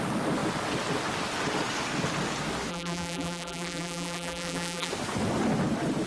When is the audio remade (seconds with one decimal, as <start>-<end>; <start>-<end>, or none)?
2.7-4.9